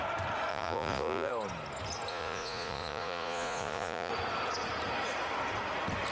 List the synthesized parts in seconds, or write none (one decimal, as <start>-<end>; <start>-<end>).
0.5-1.3; 2.1-4.1